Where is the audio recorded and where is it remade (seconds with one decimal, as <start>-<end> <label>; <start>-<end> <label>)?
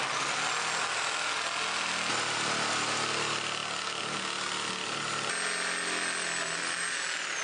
0.0-7.4 recorded